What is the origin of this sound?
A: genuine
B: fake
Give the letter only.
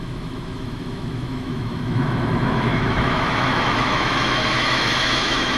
B